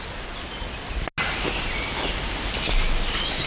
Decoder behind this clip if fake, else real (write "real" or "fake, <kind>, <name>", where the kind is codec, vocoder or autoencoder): real